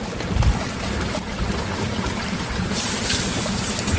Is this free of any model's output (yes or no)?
yes